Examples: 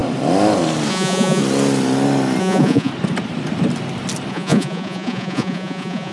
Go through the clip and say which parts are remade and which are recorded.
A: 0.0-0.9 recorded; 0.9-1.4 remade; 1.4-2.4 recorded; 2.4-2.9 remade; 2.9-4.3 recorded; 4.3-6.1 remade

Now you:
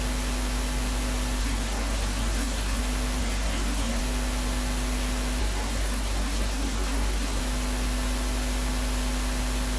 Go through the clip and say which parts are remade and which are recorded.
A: 0.0-1.4 recorded; 1.4-2.8 remade; 2.8-3.2 recorded; 3.2-4.0 remade; 4.0-5.4 recorded; 5.4-7.4 remade; 7.4-9.8 recorded